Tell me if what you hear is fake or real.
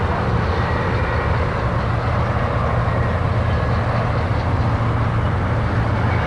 real